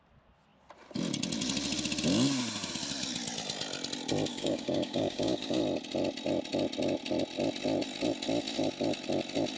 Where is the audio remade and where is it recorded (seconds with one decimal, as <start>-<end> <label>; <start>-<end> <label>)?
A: 0.0-4.3 recorded; 4.3-5.6 remade; 5.6-9.6 recorded